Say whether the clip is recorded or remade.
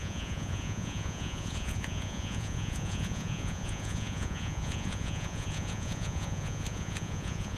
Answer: remade